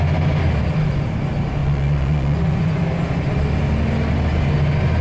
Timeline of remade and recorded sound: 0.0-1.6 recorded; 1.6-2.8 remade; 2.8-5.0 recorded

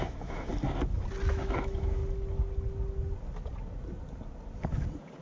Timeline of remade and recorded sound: 0.0-0.5 remade; 0.5-1.3 recorded; 1.3-2.0 remade; 2.0-5.2 recorded

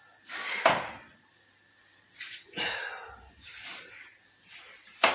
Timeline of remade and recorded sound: 0.0-1.9 recorded; 1.9-5.1 remade

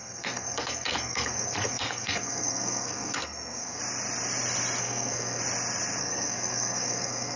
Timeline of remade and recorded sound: 0.0-3.8 remade; 3.8-4.8 recorded; 4.8-5.4 remade; 5.4-6.0 recorded; 6.0-7.4 remade